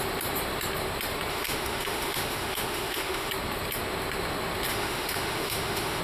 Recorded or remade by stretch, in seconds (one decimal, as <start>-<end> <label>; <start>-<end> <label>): 0.0-1.3 recorded; 1.3-3.3 remade; 3.3-4.7 recorded; 4.7-6.0 remade

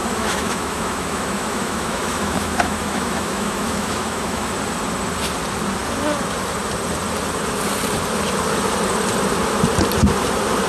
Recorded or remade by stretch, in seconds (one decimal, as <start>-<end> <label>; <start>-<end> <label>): 0.0-4.5 remade; 4.5-10.7 recorded